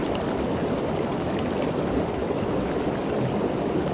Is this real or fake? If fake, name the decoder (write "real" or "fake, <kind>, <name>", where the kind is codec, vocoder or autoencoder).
real